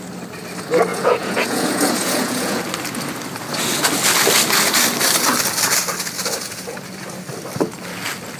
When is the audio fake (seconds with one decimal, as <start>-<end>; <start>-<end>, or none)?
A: 0.9-2.6